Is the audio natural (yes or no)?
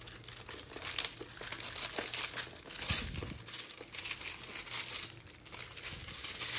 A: yes